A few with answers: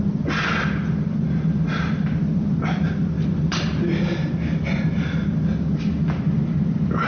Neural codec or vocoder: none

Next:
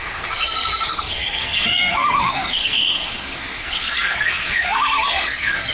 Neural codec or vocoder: codec, SNAC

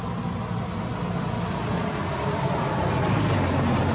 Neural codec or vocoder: none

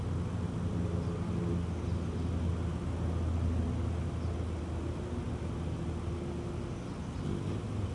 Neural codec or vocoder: none